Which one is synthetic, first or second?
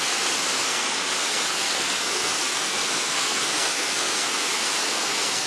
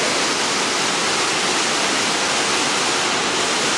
first